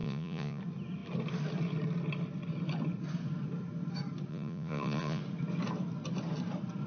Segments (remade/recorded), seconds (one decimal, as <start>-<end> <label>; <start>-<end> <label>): 0.0-0.6 remade; 0.6-4.3 recorded; 4.3-5.2 remade; 5.2-6.9 recorded